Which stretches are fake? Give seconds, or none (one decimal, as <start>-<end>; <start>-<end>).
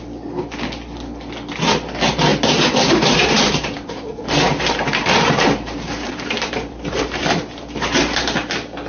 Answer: 2.3-7.6